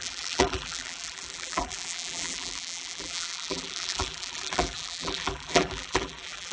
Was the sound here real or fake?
fake